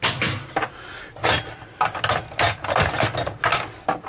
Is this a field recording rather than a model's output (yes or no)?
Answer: yes